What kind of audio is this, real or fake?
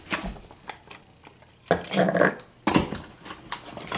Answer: real